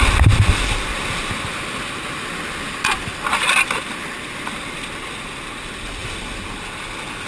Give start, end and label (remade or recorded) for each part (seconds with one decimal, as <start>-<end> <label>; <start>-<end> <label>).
0.0-7.3 recorded